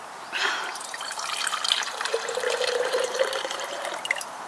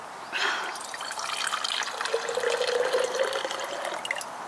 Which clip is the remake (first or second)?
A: first